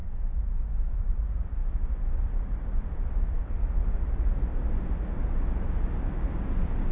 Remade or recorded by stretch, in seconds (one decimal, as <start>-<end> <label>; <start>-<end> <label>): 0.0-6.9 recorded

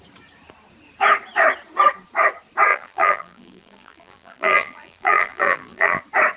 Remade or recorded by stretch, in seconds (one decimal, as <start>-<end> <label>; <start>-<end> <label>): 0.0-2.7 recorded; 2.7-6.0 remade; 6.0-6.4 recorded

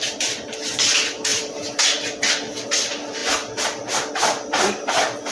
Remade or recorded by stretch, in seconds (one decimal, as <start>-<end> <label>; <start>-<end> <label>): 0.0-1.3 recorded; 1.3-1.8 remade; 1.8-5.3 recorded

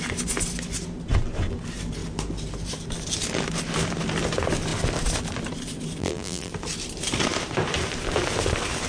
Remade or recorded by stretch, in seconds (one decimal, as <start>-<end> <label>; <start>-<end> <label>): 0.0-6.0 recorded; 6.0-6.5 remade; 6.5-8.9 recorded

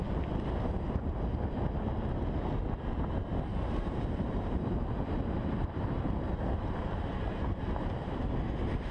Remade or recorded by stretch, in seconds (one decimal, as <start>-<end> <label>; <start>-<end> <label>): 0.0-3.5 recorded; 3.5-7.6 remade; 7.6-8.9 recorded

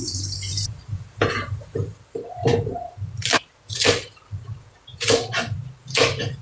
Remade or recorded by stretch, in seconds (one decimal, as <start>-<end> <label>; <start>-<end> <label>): 0.0-6.4 remade

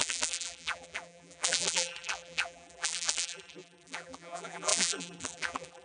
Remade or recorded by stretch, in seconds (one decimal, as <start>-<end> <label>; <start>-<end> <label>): 0.0-5.8 remade